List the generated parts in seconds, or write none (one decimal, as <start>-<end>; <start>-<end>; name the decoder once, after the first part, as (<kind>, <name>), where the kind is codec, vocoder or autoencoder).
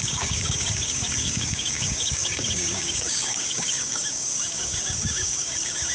0.0-5.9 (codec, DAC)